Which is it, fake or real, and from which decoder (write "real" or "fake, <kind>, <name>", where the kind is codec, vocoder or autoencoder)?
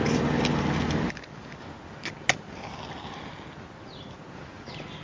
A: real